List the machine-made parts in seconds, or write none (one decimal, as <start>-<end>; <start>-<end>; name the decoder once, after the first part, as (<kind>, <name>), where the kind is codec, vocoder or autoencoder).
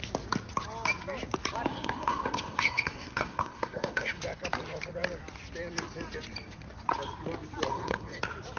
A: 1.7-4.2 (codec, SNAC); 7.7-8.2